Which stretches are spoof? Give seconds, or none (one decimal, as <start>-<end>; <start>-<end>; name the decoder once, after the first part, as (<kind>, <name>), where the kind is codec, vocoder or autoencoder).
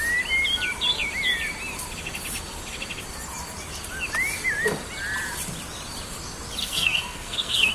6.6-7.7 (codec, SNAC)